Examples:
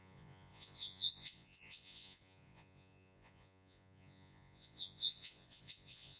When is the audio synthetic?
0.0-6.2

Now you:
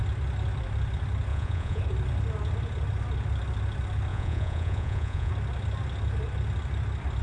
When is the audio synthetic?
1.3-1.8; 4.1-5.3

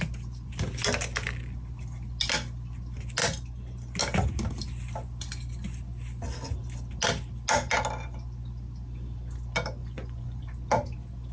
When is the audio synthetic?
9.8-10.4

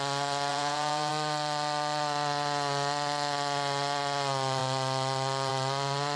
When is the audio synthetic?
0.5-1.1

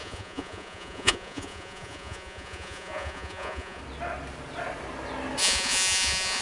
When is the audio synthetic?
0.0-3.8; 5.4-6.4

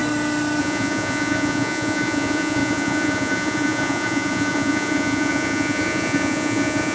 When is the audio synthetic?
0.6-6.9

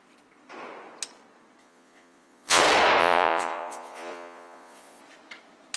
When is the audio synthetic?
1.6-2.6; 3.0-5.0